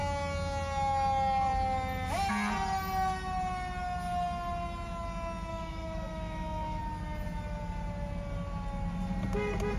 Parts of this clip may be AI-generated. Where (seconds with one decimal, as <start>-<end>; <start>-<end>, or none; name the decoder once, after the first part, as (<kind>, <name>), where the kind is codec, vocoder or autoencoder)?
5.5-6.8 (autoencoder, DAC-VAE)

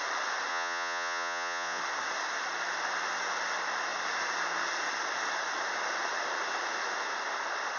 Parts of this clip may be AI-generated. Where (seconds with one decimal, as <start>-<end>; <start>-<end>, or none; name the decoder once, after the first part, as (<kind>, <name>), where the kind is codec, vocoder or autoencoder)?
0.5-1.8 (vocoder, Vocos)

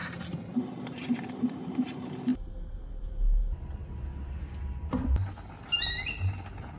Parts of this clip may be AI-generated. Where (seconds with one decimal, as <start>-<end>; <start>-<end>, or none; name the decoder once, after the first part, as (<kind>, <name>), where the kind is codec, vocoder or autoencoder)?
0.0-2.3 (vocoder, BigVGAN v2)